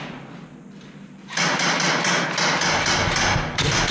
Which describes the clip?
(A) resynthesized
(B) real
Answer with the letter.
B